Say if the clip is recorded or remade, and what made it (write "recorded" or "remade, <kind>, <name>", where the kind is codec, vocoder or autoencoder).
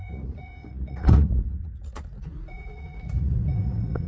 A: remade, vocoder, Vocos